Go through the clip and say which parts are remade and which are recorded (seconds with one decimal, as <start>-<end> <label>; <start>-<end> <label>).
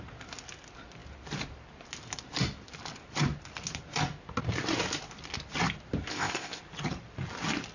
0.0-6.1 recorded; 6.1-6.6 remade; 6.6-7.7 recorded